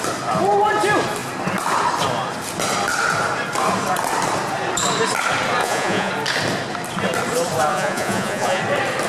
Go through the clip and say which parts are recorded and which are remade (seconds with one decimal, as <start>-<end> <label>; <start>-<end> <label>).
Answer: 0.0-5.6 recorded; 5.6-6.1 remade; 6.1-7.7 recorded; 7.7-8.6 remade; 8.6-9.1 recorded